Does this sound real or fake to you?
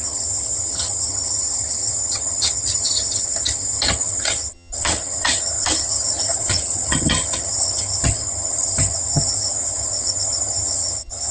fake